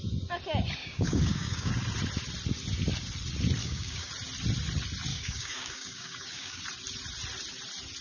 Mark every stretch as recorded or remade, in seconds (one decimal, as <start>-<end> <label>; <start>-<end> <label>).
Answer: 0.0-0.8 recorded; 0.8-1.7 remade; 1.7-3.6 recorded; 3.6-4.1 remade; 4.1-5.1 recorded; 5.1-6.6 remade; 6.6-8.0 recorded